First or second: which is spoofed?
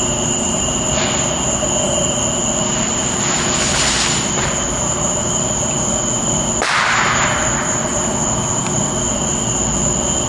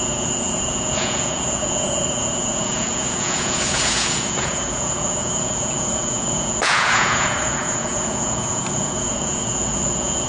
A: second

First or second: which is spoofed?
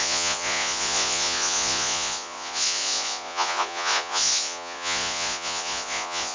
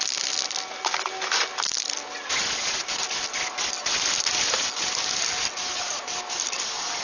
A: first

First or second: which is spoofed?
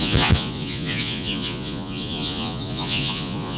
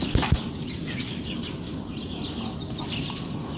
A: first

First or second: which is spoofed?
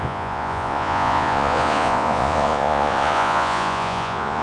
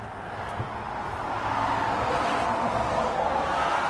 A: first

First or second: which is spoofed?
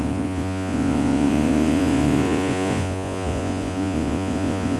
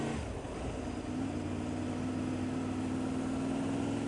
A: first